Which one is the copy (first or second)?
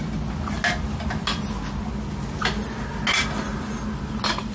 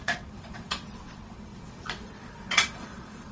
second